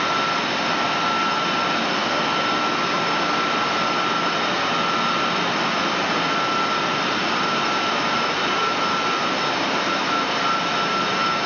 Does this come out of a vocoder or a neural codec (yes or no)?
no